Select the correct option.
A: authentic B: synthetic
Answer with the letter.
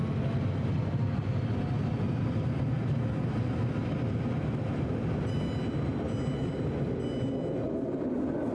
A